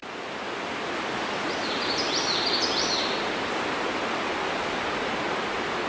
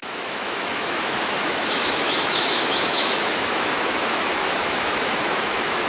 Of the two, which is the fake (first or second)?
second